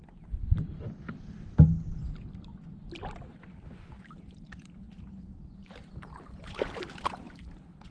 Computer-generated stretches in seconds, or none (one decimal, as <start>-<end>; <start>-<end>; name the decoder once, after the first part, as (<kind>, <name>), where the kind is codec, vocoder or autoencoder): none